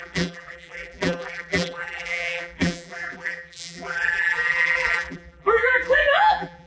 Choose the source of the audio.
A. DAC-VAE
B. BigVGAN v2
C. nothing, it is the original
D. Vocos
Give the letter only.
B